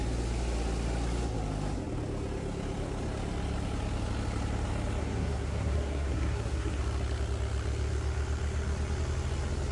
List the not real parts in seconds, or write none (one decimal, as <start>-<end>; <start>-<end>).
5.0-6.8

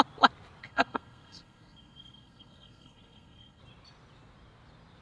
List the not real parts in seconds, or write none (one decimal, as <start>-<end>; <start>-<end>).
0.6-3.6

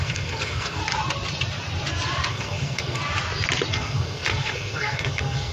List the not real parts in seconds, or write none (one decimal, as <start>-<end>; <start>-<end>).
0.0-0.8; 2.3-3.0; 3.7-5.5

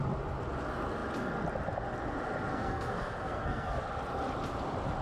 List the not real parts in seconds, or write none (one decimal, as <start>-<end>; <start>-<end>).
2.5-3.8

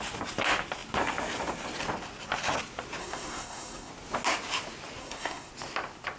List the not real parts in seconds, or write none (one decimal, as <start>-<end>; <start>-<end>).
3.0-3.9; 5.0-5.5